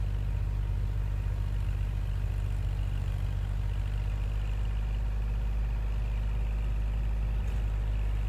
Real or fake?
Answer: real